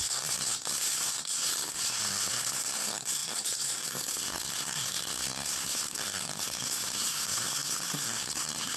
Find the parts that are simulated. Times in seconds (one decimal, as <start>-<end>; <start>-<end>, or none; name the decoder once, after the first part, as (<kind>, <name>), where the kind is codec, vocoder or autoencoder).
0.0-8.8 (codec, SNAC)